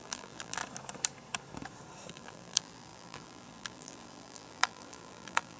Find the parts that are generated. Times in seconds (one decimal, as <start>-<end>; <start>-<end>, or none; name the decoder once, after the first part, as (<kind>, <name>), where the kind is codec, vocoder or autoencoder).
0.0-0.6 (vocoder, BigVGAN v2); 2.1-5.6